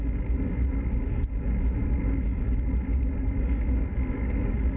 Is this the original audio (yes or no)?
yes